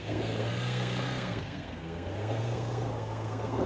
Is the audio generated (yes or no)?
yes